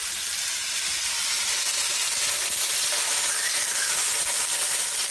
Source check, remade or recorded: recorded